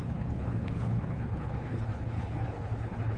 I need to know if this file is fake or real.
fake